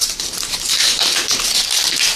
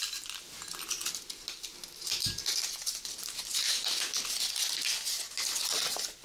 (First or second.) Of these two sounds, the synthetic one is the first